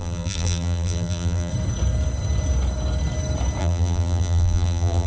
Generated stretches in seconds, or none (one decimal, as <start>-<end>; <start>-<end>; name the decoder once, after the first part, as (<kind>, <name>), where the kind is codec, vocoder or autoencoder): 0.0-1.5 (vocoder, BigVGAN v2); 3.6-5.1